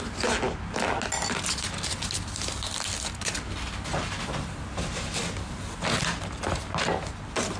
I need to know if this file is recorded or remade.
recorded